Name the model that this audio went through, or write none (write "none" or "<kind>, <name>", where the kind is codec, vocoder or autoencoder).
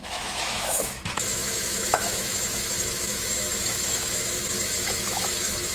autoencoder, DAC-VAE